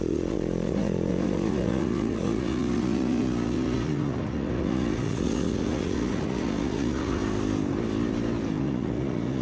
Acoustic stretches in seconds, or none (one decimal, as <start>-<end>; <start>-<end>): 7.2-8.6